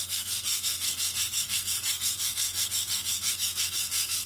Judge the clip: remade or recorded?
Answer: remade